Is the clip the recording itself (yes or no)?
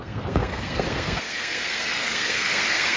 no